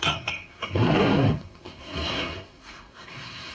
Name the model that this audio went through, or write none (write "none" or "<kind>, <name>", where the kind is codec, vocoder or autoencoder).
codec, SNAC